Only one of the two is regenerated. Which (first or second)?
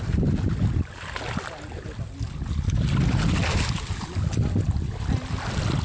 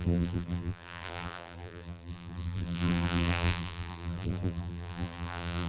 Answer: second